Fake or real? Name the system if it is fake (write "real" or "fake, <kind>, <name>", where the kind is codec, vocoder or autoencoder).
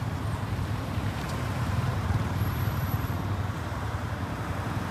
fake, vocoder, BigVGAN v2